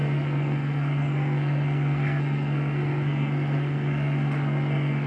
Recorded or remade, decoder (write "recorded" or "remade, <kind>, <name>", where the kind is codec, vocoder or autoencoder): remade, codec, SNAC